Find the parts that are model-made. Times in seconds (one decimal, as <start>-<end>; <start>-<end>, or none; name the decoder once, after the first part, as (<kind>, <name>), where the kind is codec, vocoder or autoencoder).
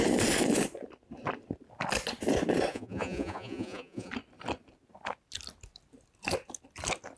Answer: 2.7-4.1 (vocoder, Vocos)